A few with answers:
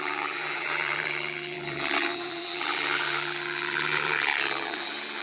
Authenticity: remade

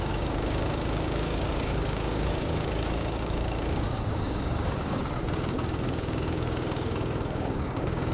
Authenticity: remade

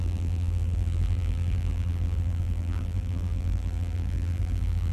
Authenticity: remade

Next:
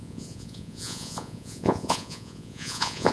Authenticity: remade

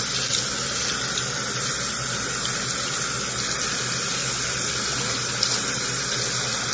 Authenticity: recorded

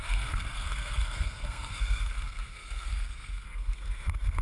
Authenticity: remade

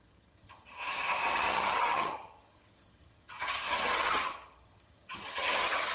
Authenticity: remade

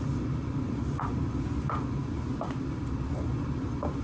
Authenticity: recorded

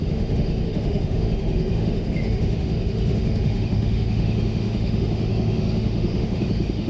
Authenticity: remade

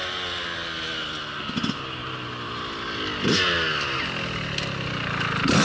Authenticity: recorded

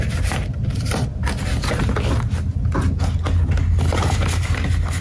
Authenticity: recorded